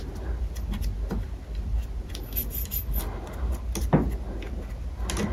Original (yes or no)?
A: yes